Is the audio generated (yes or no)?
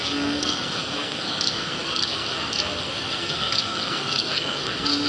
yes